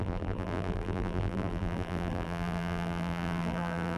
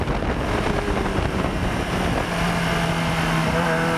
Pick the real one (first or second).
second